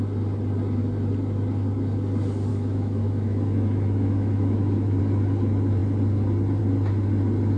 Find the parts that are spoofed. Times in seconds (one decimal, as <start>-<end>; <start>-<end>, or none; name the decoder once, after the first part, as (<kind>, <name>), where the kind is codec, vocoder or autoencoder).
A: 2.5-5.0 (autoencoder, DAC-VAE)